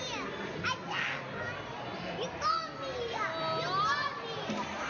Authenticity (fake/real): real